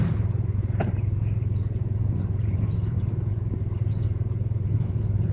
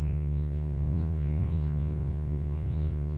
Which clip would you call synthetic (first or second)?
second